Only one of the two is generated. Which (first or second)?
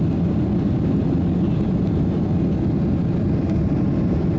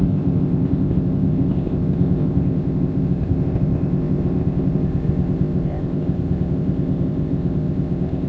second